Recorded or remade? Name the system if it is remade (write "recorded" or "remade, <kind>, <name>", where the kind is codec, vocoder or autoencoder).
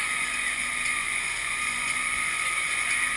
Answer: remade, vocoder, Vocos